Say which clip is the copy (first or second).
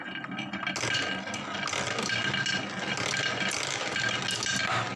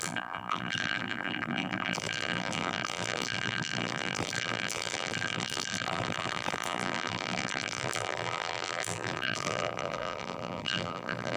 second